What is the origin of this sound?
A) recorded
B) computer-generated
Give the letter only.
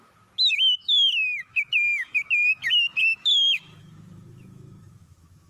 B